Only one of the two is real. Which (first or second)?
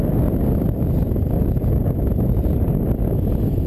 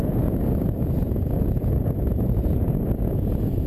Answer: first